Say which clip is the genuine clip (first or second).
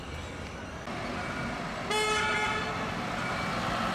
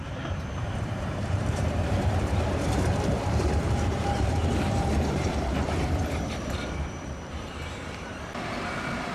first